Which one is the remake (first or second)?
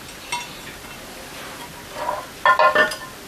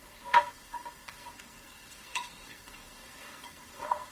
second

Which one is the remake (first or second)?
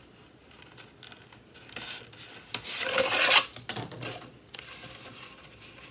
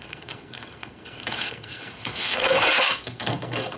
second